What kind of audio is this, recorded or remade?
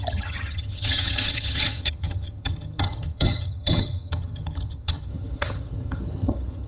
remade